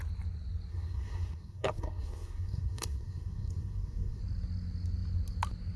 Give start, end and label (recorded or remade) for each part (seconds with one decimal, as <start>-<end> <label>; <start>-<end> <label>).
0.0-0.7 recorded; 0.7-4.2 remade; 4.2-5.8 recorded